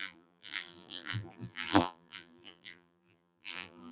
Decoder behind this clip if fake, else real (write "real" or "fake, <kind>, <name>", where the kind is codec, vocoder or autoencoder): fake, vocoder, BigVGAN v2